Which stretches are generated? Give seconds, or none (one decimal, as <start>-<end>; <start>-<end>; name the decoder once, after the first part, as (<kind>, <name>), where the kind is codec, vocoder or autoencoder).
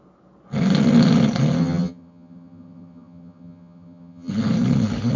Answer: 1.6-4.3 (vocoder, HiFi-GAN)